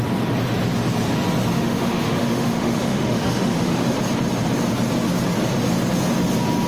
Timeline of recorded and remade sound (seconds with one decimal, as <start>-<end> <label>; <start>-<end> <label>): 0.0-1.5 recorded; 1.5-3.9 remade; 3.9-6.7 recorded